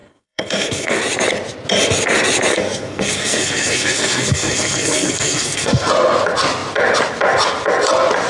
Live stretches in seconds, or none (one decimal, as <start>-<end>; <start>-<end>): 1.0-2.5; 5.9-8.3